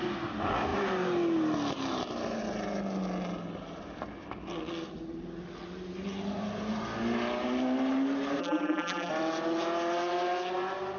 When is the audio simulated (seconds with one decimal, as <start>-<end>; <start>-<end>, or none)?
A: 8.4-9.1